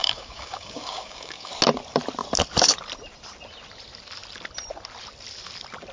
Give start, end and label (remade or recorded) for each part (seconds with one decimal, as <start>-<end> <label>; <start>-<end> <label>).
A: 0.0-1.5 remade; 1.5-5.9 recorded